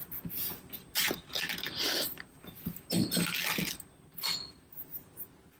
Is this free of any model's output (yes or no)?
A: yes